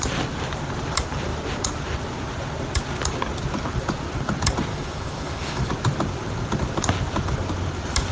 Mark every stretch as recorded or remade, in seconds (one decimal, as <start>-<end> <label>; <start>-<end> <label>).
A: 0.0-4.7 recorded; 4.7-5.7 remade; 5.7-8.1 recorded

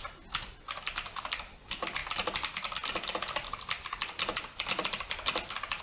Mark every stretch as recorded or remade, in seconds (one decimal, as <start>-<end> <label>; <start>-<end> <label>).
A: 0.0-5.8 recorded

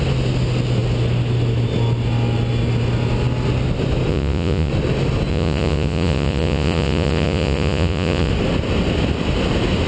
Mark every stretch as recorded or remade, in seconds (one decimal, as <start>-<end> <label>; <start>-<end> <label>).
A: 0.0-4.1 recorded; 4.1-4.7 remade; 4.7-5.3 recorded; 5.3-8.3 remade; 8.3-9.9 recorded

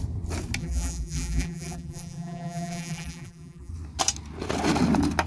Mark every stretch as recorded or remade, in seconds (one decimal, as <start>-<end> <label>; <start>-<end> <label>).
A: 0.0-0.6 recorded; 0.6-3.7 remade; 3.7-5.3 recorded

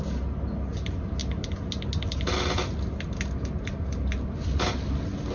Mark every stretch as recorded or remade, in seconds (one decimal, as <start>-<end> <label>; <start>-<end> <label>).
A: 0.0-5.3 recorded

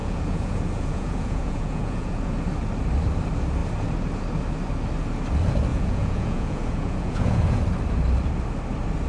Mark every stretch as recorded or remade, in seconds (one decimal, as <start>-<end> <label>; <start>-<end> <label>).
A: 0.0-2.3 remade; 2.3-5.7 recorded; 5.7-7.6 remade; 7.6-9.1 recorded

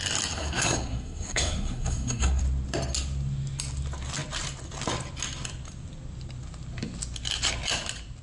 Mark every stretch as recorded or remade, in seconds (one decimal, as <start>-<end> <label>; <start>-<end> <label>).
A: 0.0-0.4 recorded; 0.4-2.4 remade; 2.4-8.2 recorded

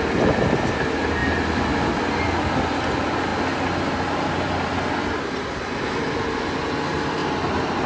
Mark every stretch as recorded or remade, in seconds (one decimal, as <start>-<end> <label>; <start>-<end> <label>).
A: 0.0-7.9 recorded